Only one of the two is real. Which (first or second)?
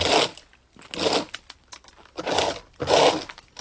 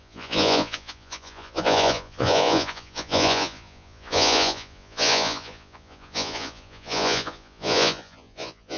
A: first